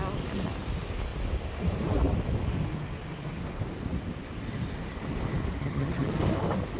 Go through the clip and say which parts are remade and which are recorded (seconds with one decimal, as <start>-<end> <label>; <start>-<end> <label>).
0.0-5.6 recorded; 5.6-6.2 remade; 6.2-6.8 recorded